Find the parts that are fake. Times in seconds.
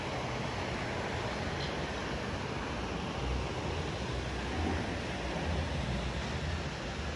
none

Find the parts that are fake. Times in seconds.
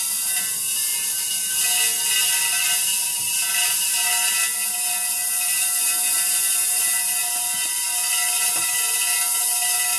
0.9-1.5 (vocoder, BigVGAN v2)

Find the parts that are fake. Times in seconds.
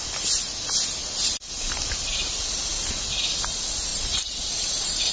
1.0-2.4 (vocoder, BigVGAN v2); 3.9-5.1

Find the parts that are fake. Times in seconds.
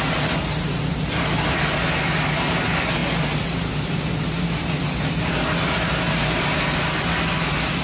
none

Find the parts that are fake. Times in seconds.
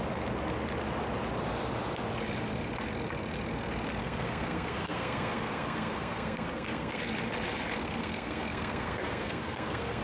4.0-7.0 (codec, SNAC); 7.8-10.0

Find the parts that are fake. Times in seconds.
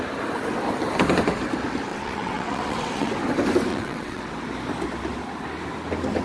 1.9-3.1 (vocoder, WaveNeXt); 3.7-4.2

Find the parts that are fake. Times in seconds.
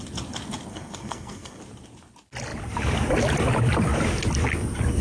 0.7-1.6 (codec, SNAC)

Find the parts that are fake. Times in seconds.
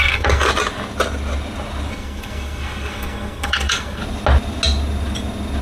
0.0-0.5 (codec, SNAC); 1.9-4.0